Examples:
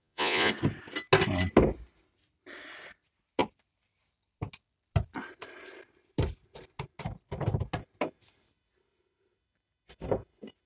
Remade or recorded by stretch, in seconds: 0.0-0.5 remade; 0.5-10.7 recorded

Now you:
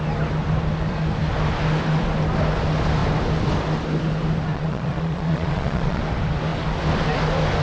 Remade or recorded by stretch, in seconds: 0.0-4.5 recorded; 4.5-6.0 remade; 6.0-7.6 recorded

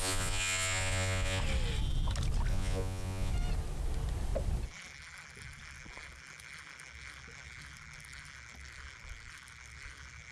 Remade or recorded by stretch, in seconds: 0.0-1.4 remade; 1.4-2.5 recorded; 2.5-3.3 remade; 3.3-10.3 recorded

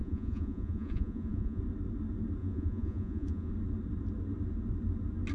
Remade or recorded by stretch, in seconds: 0.0-1.6 remade; 1.6-2.4 recorded; 2.4-3.5 remade; 3.5-5.3 recorded